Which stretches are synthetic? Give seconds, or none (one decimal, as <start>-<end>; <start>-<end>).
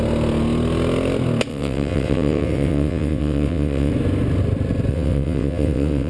1.5-3.9; 4.9-6.1